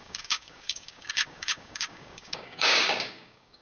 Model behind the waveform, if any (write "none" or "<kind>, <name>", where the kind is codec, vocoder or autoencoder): codec, DAC